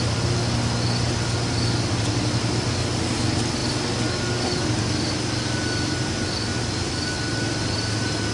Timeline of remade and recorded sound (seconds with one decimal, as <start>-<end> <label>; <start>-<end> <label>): 0.0-8.3 recorded